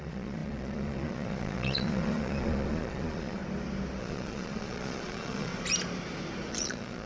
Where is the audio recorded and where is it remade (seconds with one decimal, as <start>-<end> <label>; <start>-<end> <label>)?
0.0-3.4 remade; 3.4-4.0 recorded; 4.0-5.5 remade; 5.5-6.5 recorded; 6.5-7.1 remade